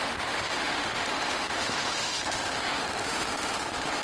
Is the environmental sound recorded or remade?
remade